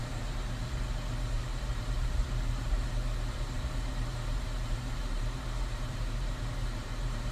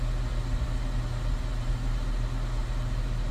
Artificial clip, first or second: first